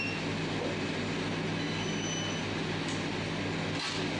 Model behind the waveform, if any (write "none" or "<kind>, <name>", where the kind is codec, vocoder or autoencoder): none